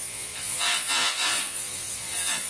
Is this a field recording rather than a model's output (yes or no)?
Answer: no